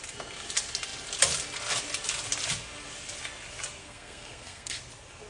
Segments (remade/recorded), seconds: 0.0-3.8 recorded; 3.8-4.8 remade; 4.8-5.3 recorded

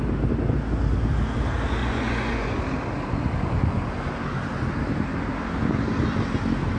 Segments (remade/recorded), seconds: 0.0-1.8 recorded; 1.8-2.6 remade; 2.6-6.8 recorded